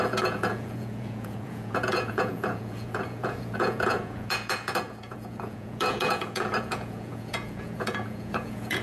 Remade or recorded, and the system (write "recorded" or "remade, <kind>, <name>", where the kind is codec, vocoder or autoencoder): remade, vocoder, Vocos